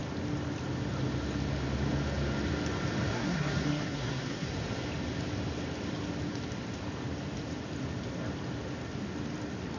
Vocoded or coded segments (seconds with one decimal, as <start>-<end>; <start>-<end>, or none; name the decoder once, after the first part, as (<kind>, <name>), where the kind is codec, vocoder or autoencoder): 3.1-4.5 (codec, SNAC)